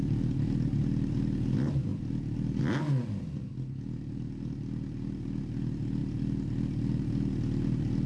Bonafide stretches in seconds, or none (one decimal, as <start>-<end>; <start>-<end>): 0.0-8.1